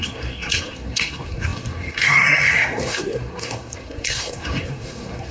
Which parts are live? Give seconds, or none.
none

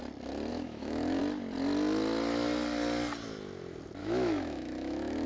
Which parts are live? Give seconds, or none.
0.0-0.5; 1.2-4.0

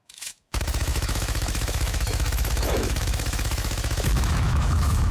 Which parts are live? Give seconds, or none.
none

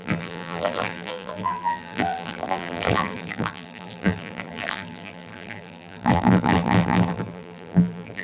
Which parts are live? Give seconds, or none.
none

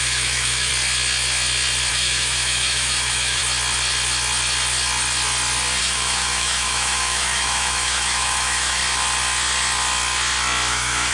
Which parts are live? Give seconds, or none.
0.7-1.9; 3.4-5.8; 8.8-10.7

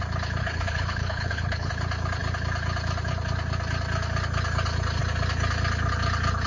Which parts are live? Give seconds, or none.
0.0-0.4; 1.7-6.5

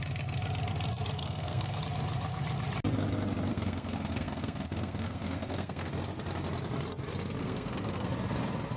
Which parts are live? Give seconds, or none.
0.0-1.2; 1.8-3.5; 5.9-7.4; 8.1-8.8

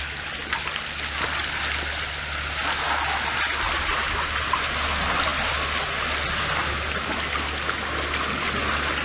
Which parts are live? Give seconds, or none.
0.0-9.0